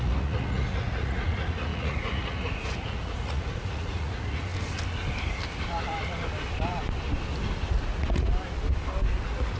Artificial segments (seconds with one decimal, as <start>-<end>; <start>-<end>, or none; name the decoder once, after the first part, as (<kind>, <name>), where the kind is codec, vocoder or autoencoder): 0.0-4.5 (vocoder, Vocos); 7.7-8.3; 9.2-9.6